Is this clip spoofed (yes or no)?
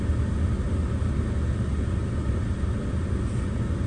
no